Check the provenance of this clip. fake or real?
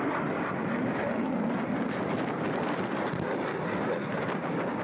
real